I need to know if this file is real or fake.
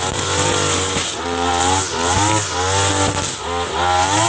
real